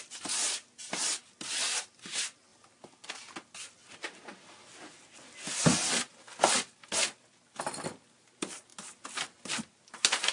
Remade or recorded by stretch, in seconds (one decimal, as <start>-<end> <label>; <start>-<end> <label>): 0.0-2.5 recorded; 2.5-3.1 remade; 3.1-10.3 recorded